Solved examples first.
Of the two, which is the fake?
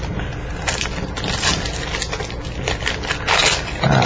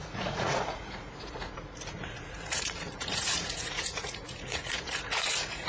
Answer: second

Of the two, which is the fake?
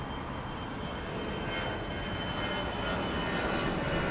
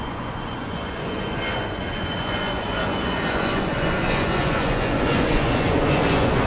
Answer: second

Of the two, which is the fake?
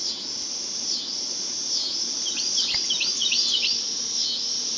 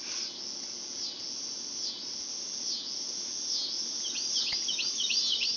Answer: first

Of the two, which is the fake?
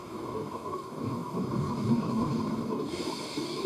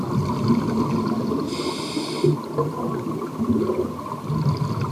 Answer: first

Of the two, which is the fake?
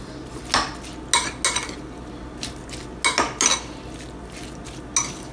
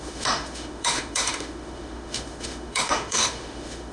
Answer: second